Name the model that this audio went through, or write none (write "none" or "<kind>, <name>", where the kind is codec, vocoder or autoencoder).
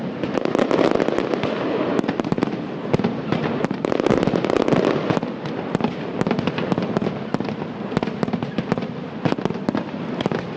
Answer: none